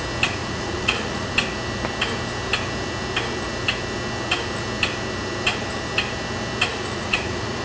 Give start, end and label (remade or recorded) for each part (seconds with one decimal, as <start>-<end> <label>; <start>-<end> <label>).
0.0-0.4 recorded; 0.4-1.3 remade; 1.3-6.7 recorded; 6.7-7.6 remade